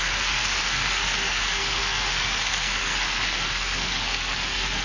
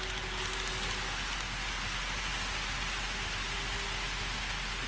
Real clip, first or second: second